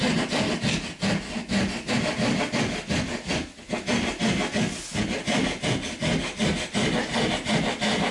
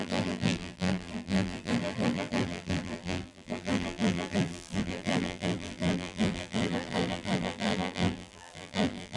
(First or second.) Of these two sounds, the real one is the first